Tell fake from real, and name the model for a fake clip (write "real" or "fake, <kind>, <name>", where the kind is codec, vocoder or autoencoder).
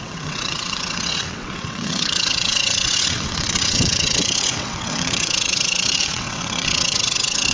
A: fake, vocoder, WaveNeXt